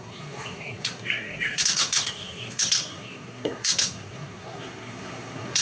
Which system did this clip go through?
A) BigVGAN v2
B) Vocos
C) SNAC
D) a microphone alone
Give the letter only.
C